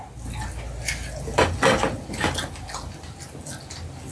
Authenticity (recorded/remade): recorded